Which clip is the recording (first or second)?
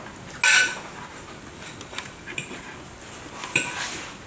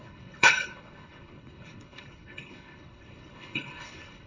first